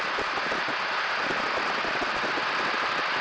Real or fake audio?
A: real